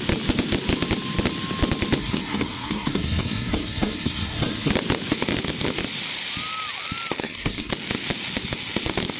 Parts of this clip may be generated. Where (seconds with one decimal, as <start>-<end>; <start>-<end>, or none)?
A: 2.0-4.7; 7.2-7.7